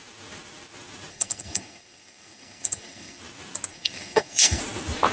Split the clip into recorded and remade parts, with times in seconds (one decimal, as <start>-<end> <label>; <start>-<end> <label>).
0.0-1.1 recorded; 1.1-3.2 remade; 3.2-3.7 recorded; 3.7-4.6 remade; 4.6-5.1 recorded